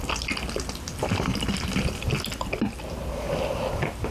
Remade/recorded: recorded